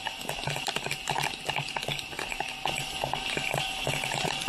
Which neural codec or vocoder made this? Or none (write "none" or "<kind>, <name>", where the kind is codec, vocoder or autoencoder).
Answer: none